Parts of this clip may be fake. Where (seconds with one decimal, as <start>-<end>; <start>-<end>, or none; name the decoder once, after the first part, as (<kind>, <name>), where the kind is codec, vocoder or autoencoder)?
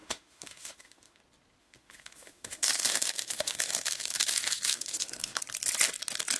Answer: 0.0-1.2 (autoencoder, DAC-VAE); 1.6-5.4